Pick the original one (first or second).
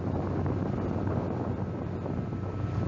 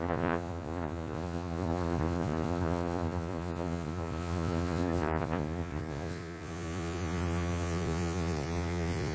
first